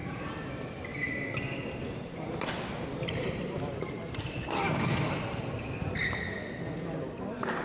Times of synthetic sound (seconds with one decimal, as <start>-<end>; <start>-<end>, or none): none